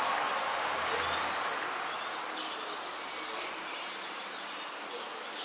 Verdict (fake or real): real